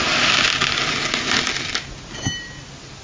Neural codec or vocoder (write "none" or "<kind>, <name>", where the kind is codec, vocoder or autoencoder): none